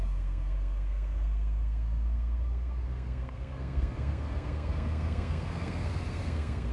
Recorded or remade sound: remade